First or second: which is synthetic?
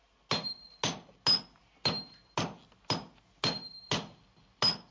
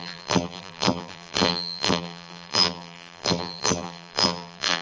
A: second